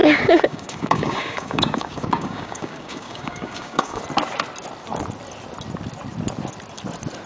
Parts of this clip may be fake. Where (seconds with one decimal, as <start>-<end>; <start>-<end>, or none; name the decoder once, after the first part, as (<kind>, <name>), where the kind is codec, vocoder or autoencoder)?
0.0-4.0 (codec, DAC)